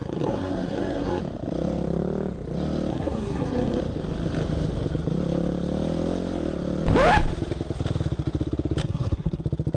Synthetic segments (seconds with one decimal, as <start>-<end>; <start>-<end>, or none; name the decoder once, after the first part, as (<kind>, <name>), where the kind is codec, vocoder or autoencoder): 0.0-1.2 (codec, SNAC); 2.9-3.8; 8.8-9.4